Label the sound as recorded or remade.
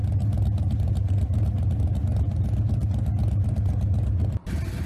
recorded